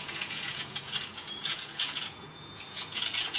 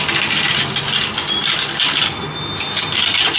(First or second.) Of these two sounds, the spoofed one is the first